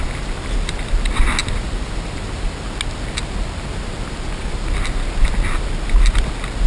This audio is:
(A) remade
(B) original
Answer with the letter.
B